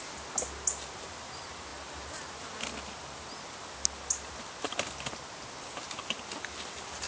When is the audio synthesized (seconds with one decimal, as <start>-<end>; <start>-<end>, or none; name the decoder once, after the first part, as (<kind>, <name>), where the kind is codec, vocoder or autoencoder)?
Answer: none